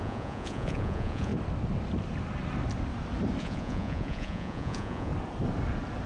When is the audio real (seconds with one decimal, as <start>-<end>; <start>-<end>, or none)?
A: 1.3-3.4; 5.1-6.1